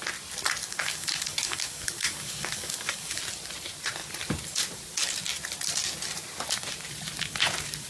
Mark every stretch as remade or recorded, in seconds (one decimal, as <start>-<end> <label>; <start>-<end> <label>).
0.0-0.6 recorded; 0.6-3.2 remade; 3.2-7.9 recorded